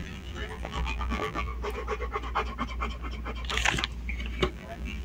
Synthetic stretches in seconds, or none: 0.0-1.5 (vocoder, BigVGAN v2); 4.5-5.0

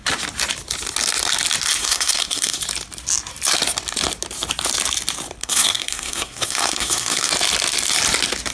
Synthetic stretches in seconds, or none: 1.8-2.6 (codec, SNAC); 5.4-7.3

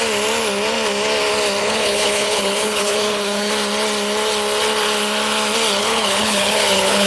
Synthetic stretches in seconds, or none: 1.6-3.5 (codec, HILCodec); 5.8-7.1

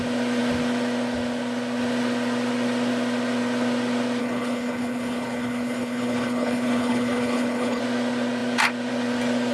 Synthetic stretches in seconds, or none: 4.2-7.8 (codec, HILCodec)

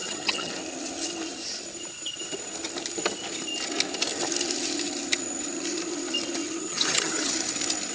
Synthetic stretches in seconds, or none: 0.0-0.5 (vocoder, HiFi-GAN); 6.6-7.3

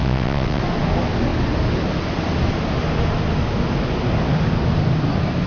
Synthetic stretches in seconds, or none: 0.0-0.6 (vocoder, WaveNeXt)

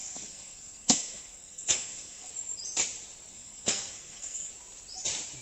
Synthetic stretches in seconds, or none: 0.0-2.3 (codec, SNAC); 3.3-4.5